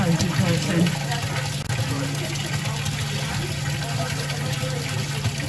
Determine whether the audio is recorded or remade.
recorded